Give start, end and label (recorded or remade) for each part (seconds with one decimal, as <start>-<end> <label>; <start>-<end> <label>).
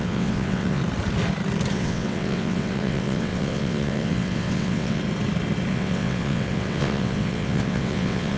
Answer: 0.0-0.8 remade; 0.8-1.7 recorded; 1.7-5.0 remade; 5.0-5.7 recorded; 5.7-8.4 remade